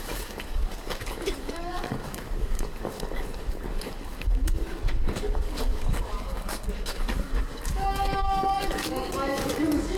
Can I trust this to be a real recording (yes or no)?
no